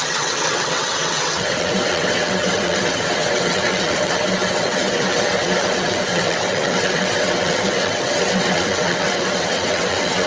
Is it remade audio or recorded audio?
remade